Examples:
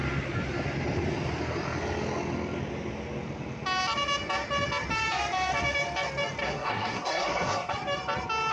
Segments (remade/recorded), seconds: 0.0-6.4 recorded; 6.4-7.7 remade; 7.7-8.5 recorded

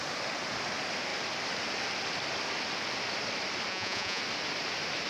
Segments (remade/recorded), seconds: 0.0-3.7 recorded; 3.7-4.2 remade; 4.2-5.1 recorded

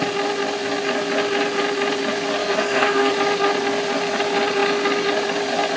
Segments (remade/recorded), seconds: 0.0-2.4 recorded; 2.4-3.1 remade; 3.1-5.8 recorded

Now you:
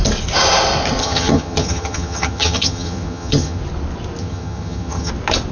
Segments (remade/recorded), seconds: 0.0-1.0 recorded; 1.0-3.6 remade; 3.6-4.2 recorded; 4.2-5.1 remade; 5.1-5.5 recorded

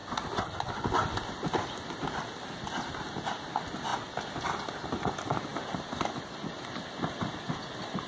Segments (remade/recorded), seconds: 0.0-8.1 recorded

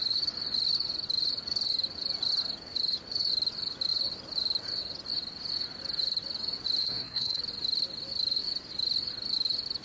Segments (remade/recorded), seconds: 0.0-6.8 recorded; 6.8-7.4 remade; 7.4-9.8 recorded

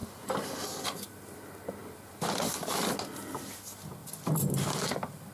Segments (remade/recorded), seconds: 0.0-5.3 recorded